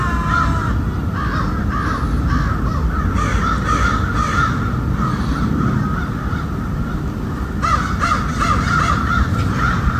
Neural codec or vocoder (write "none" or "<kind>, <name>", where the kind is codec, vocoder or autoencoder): none